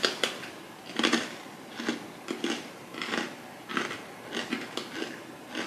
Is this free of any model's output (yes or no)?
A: yes